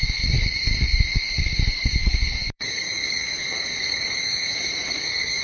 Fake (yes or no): yes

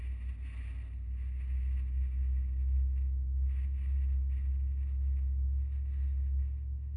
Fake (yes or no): no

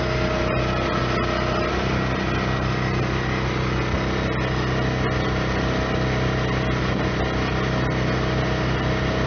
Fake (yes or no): no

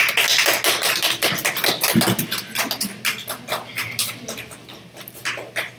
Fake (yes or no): no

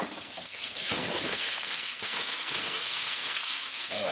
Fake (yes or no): yes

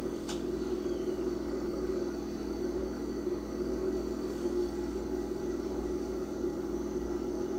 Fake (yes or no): yes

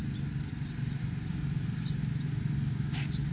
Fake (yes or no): no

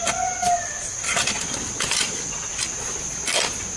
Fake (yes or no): no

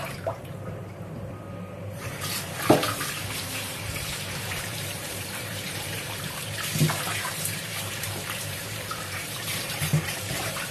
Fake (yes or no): yes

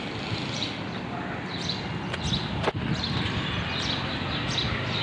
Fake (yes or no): no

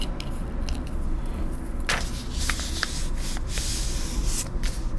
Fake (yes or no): no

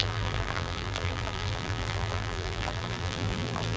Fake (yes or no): yes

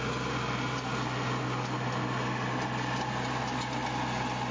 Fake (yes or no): no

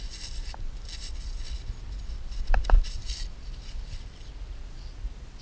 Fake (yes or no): no